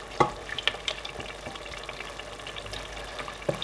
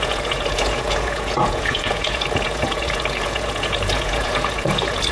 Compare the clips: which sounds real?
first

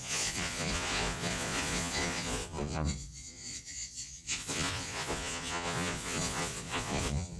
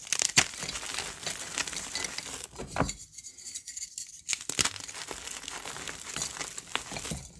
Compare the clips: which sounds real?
second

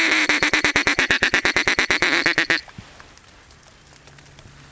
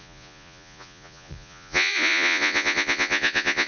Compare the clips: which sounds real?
first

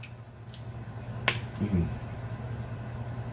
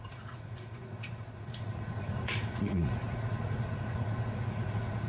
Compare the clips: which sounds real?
first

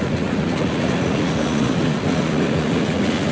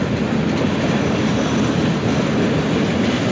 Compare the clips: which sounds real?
second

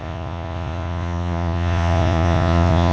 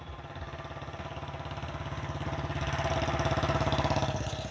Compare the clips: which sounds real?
second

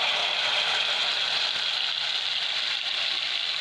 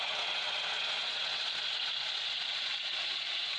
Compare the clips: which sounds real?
first